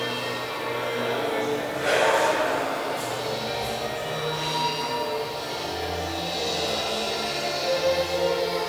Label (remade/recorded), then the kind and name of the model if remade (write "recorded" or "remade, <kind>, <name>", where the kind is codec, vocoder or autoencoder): recorded